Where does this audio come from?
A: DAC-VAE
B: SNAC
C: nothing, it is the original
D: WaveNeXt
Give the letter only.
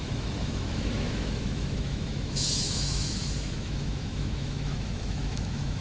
A